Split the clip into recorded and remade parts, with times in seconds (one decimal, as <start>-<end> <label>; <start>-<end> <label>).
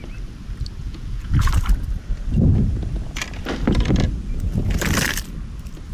0.0-0.8 recorded; 0.8-1.5 remade; 1.5-5.9 recorded